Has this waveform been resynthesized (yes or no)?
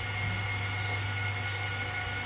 no